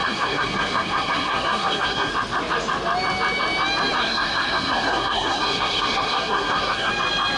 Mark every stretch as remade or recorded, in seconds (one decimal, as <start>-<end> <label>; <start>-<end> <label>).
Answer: 0.0-2.1 remade; 2.1-4.0 recorded; 4.0-6.9 remade; 6.9-7.4 recorded